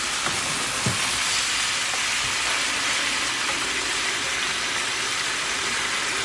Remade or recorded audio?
recorded